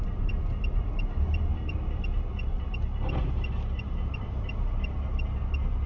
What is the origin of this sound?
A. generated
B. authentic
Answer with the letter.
B